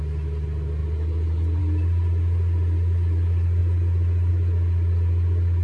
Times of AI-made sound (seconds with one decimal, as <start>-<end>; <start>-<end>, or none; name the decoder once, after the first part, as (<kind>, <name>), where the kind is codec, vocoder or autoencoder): none